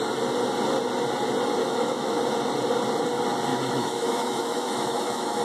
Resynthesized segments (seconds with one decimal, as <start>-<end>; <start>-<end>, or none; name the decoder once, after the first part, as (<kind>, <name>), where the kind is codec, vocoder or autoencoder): 1.6-2.2 (autoencoder, DAC-VAE); 3.5-5.4